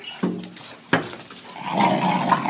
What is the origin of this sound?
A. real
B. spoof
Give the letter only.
A